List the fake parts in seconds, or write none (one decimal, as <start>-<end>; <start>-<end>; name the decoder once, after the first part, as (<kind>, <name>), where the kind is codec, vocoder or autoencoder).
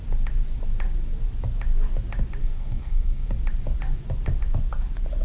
2.4-3.3 (codec, SNAC)